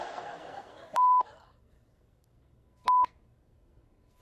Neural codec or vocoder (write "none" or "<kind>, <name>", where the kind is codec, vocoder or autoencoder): codec, SNAC